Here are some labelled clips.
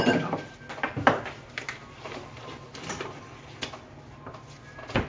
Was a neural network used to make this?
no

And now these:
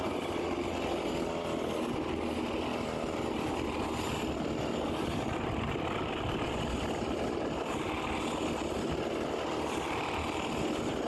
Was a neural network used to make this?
no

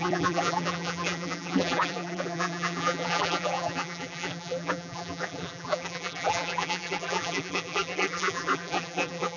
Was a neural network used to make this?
yes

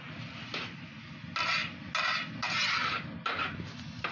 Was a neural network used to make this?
no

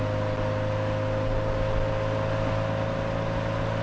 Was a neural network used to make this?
no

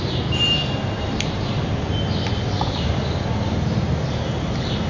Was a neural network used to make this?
no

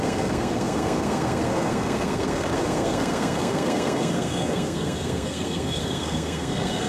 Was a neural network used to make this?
yes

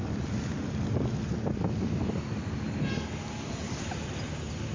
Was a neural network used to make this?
no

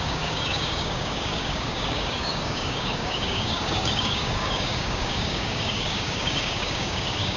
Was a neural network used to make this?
yes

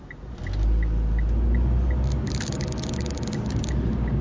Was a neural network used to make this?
no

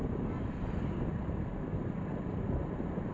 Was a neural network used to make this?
no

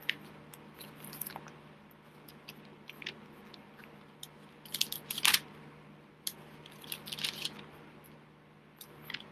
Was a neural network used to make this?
no